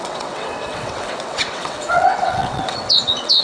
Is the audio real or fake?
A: fake